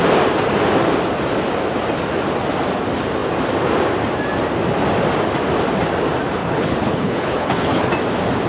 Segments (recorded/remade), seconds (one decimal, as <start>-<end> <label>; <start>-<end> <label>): 0.0-6.4 recorded; 6.4-7.9 remade; 7.9-8.5 recorded

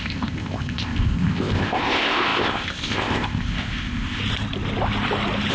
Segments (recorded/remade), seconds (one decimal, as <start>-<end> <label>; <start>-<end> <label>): 0.0-4.2 remade; 4.2-5.5 recorded

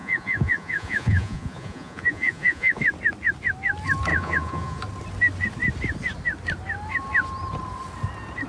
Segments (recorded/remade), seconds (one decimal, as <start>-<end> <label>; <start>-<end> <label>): 0.0-2.8 remade; 2.8-4.1 recorded; 4.1-4.8 remade; 4.8-8.5 recorded

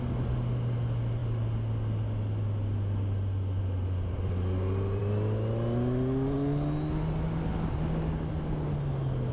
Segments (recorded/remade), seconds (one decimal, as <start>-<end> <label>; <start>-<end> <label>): 0.0-9.3 recorded

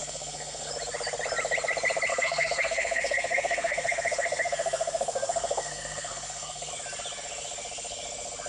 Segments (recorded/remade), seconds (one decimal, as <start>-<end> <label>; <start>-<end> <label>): 0.0-0.7 remade; 0.7-2.1 recorded; 2.1-6.7 remade; 6.7-8.5 recorded

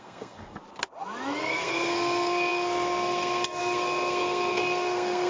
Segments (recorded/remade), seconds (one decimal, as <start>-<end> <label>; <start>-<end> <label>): 0.0-0.6 remade; 0.6-1.4 recorded; 1.4-5.3 remade